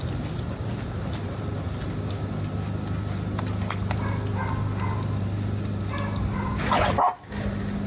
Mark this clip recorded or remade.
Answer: recorded